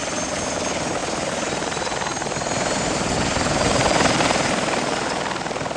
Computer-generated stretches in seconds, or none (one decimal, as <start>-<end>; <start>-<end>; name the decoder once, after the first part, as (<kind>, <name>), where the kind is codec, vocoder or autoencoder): 1.0-4.5 (vocoder, BigVGAN v2)